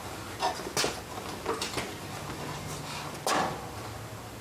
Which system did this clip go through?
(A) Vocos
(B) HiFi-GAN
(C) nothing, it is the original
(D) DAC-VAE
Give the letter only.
C